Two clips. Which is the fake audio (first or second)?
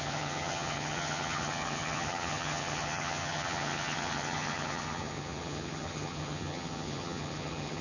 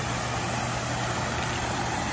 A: first